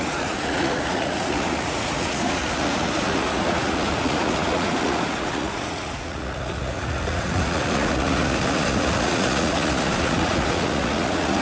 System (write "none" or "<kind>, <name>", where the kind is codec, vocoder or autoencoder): vocoder, Vocos